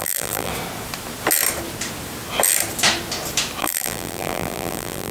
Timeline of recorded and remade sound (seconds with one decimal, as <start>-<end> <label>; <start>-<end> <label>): 0.0-0.5 remade; 0.5-3.6 recorded; 3.6-5.1 remade